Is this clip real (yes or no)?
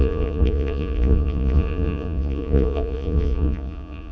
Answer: no